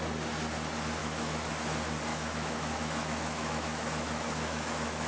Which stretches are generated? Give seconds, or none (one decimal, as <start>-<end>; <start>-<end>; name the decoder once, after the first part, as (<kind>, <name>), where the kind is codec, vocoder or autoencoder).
1.0-1.5 (autoencoder, DAC-VAE); 2.1-5.1